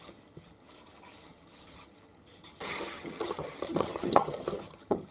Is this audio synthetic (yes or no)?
yes